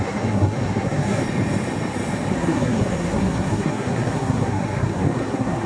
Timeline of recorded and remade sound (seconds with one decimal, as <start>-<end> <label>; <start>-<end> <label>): 0.0-1.2 remade; 1.2-2.3 recorded; 2.3-5.7 remade